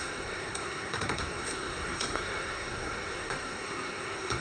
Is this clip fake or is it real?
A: fake